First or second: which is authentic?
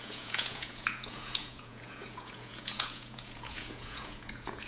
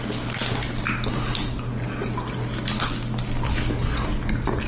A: second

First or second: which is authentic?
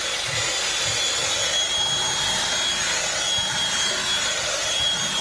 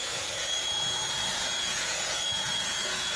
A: first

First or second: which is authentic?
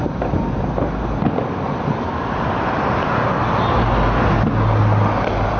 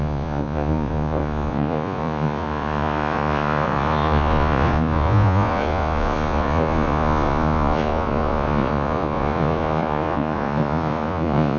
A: first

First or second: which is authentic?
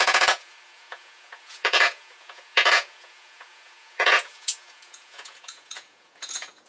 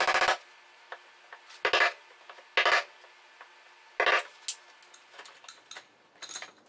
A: second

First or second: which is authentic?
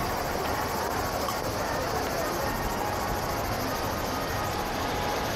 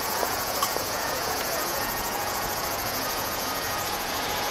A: first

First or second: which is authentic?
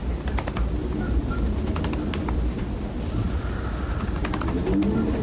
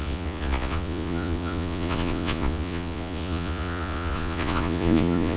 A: first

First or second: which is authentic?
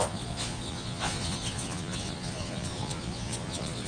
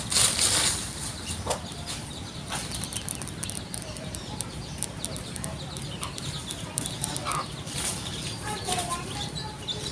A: second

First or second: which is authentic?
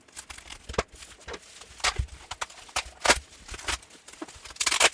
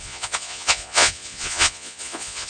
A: first